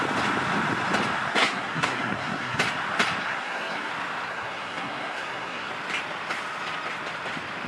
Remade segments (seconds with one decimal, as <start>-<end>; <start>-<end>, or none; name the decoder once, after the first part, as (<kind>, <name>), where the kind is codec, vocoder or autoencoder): 1.3-2.6 (codec, SNAC); 3.2-3.9; 4.3-5.7